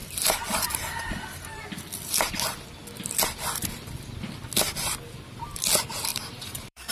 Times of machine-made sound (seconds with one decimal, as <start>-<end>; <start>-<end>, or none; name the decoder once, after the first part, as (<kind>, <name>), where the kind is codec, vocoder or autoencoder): 6.1-6.9 (vocoder, BigVGAN v2)